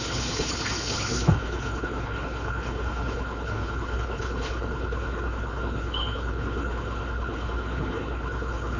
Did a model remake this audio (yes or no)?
yes